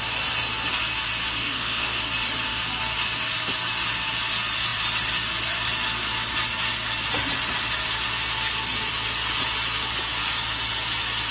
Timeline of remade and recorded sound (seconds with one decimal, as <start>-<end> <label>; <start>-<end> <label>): 0.0-1.4 recorded; 1.4-2.0 remade; 2.0-11.3 recorded